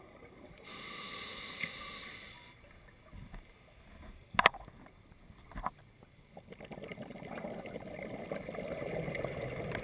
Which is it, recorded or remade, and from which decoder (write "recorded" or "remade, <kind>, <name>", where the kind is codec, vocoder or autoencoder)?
recorded